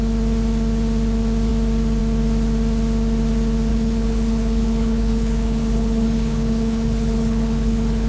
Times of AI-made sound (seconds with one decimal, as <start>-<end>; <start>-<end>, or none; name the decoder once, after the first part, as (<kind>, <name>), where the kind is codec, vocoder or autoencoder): 3.7-8.1 (codec, HILCodec)